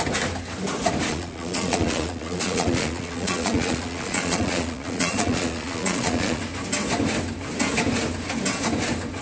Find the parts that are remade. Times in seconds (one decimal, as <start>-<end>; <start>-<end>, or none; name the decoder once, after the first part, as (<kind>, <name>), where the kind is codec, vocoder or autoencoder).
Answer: 1.1-6.4 (vocoder, Vocos)

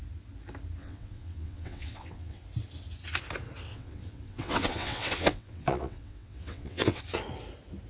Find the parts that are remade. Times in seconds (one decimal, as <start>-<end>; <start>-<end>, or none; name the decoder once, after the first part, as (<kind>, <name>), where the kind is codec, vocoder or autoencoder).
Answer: 0.8-2.4 (vocoder, WaveNeXt); 3.7-7.0

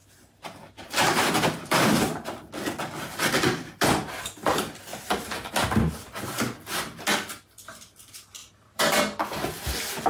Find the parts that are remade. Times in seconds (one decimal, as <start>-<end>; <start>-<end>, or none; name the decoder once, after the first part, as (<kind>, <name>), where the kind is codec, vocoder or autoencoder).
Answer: 0.0-2.5 (vocoder, BigVGAN v2); 4.9-5.5; 8.4-9.0

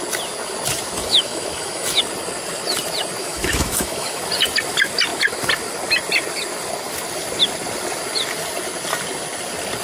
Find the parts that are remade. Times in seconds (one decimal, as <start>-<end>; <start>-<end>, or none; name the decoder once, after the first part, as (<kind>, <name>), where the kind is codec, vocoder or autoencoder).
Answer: 1.0-2.0 (autoencoder, DAC-VAE); 3.2-4.2